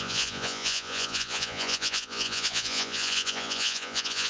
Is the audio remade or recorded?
remade